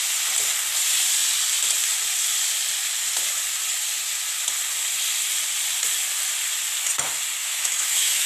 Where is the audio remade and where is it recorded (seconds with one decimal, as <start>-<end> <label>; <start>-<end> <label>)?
0.0-7.4 recorded; 7.4-8.3 remade

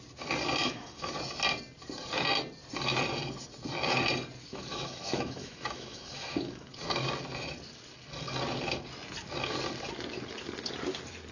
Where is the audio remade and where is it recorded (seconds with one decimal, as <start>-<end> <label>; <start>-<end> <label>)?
0.0-0.6 recorded; 0.6-1.1 remade; 1.1-4.5 recorded; 4.5-6.7 remade; 6.7-11.3 recorded

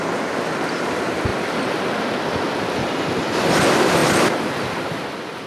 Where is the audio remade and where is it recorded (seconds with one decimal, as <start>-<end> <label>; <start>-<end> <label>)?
0.0-5.5 recorded

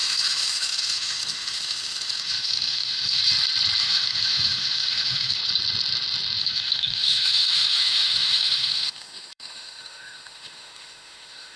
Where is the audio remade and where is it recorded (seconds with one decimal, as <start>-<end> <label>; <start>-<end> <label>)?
0.0-3.2 remade; 3.2-3.8 recorded; 3.8-5.4 remade; 5.4-6.4 recorded; 6.4-11.6 remade